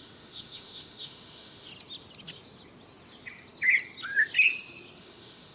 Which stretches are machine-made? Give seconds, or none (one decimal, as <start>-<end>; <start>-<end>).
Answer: 0.0-1.7; 5.0-5.5